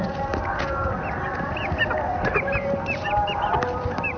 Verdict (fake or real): real